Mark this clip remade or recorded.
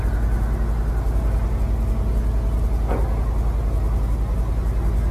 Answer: recorded